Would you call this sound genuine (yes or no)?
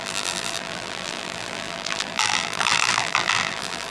no